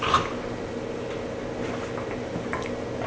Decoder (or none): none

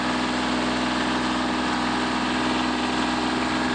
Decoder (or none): none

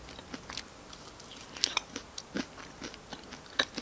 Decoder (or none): none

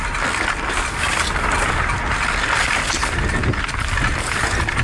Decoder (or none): none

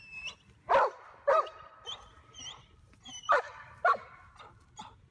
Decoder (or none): vocoder, BigVGAN v2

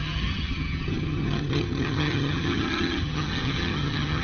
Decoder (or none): vocoder, HiFi-GAN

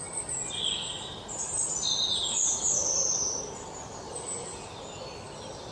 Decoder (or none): none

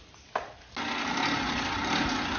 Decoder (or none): none